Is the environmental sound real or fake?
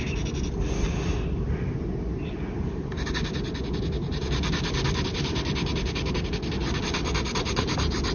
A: real